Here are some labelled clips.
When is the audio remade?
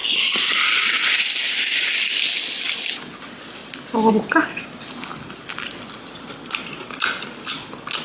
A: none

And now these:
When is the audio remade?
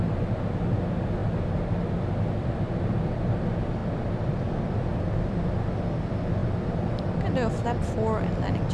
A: 3.8-4.5 (vocoder, BigVGAN v2); 4.9-5.6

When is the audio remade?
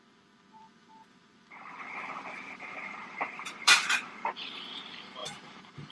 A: 0.6-4.1 (vocoder, BigVGAN v2); 5.2-5.9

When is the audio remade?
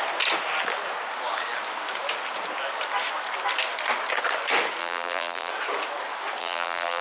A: 4.8-5.5 (vocoder, BigVGAN v2); 6.4-7.0